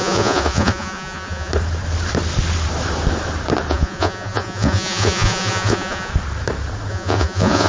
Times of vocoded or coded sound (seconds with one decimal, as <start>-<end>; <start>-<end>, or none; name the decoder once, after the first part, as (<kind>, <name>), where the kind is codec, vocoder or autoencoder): 0.0-1.5 (vocoder, Vocos); 3.7-6.1; 6.9-7.7